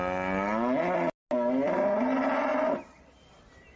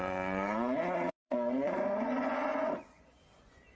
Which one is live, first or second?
first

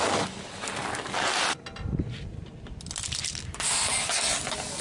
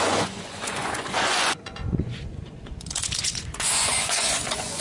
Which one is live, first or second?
first